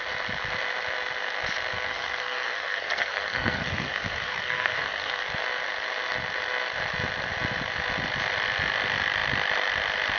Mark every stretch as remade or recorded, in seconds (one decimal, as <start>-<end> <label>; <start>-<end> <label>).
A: 0.0-1.9 recorded; 1.9-5.2 remade; 5.2-10.2 recorded